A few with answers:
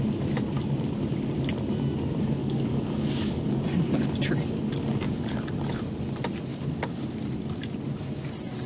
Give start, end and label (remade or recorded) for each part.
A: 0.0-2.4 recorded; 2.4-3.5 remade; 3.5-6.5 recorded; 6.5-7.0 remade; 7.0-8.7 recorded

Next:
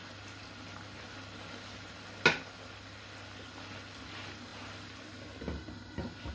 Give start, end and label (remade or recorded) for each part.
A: 0.0-6.3 recorded

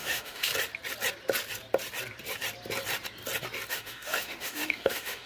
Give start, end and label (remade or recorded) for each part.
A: 0.0-0.5 remade; 0.5-3.7 recorded; 3.7-5.3 remade

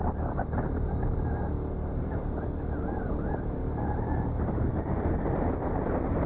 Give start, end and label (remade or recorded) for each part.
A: 0.0-6.3 recorded

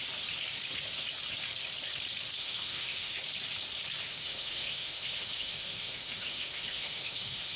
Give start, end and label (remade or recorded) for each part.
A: 0.0-2.4 recorded; 2.4-3.2 remade; 3.2-4.1 recorded; 4.1-7.6 remade

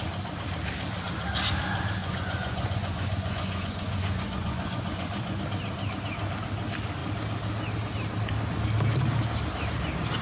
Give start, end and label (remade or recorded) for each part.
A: 0.0-2.0 recorded; 2.0-5.4 remade; 5.4-10.2 recorded

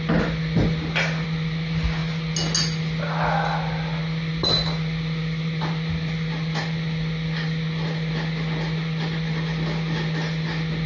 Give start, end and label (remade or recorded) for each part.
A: 0.0-10.9 recorded

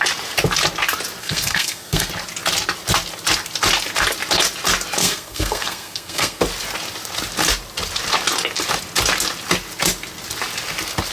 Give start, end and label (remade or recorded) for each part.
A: 0.0-1.2 recorded; 1.2-2.1 remade; 2.1-5.0 recorded; 5.0-6.4 remade; 6.4-11.1 recorded